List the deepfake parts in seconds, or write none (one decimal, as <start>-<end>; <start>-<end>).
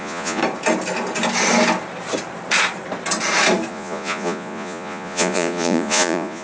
0.0-0.4; 3.7-6.4